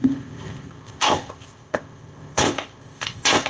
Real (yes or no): no